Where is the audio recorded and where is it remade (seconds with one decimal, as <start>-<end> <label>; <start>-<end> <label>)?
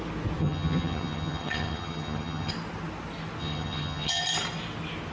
0.0-0.4 recorded; 0.4-2.5 remade; 2.5-3.4 recorded; 3.4-4.2 remade; 4.2-5.1 recorded